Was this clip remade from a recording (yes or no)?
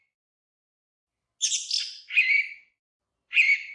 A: no